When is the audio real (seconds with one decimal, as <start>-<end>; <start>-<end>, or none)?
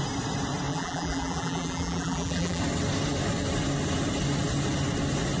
0.0-0.7; 2.6-5.4